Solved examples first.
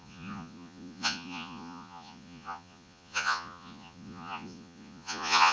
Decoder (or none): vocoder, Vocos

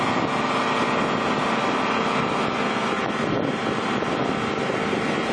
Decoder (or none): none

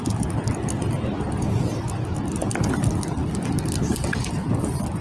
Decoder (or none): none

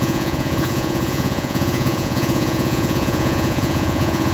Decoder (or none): vocoder, Vocos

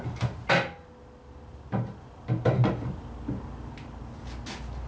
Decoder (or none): none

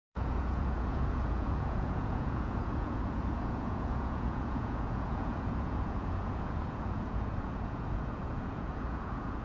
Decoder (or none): vocoder, Vocos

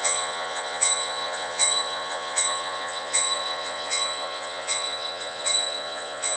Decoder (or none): vocoder, Vocos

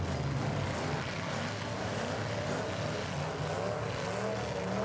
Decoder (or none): none